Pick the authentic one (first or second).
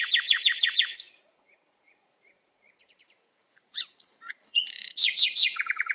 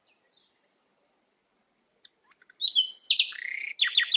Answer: second